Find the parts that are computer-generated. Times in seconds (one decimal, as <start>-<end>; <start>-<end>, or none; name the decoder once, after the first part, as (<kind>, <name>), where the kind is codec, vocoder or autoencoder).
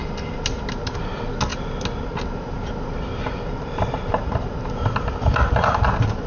none